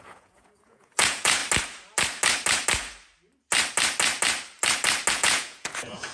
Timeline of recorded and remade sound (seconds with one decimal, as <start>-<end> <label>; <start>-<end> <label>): 0.0-1.4 remade; 1.4-5.1 recorded; 5.1-6.1 remade